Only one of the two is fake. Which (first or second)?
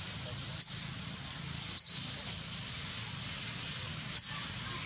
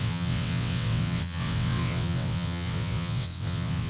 second